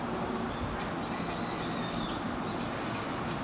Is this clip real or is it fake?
real